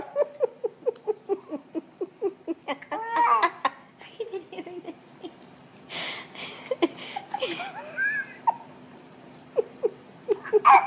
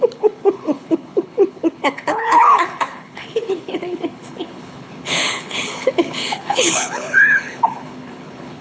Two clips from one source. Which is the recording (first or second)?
first